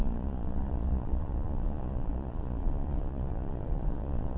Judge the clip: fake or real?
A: fake